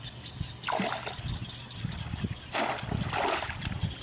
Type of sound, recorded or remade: recorded